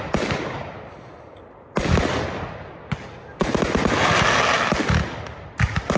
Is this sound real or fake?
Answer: real